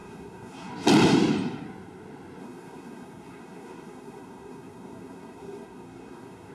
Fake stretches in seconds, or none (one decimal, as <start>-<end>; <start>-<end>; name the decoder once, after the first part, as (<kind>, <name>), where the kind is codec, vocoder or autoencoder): 0.0-0.7 (codec, SNAC); 2.4-6.5